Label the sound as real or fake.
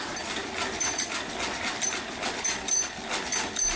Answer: fake